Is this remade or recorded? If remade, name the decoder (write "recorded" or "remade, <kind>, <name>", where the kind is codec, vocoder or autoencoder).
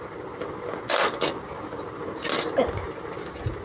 recorded